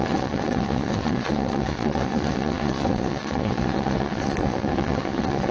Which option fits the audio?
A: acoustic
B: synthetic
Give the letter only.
B